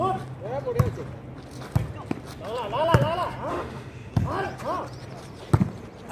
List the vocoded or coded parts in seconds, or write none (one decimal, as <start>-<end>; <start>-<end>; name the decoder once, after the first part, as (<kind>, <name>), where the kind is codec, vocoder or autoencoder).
3.5-4.1 (autoencoder, DAC-VAE)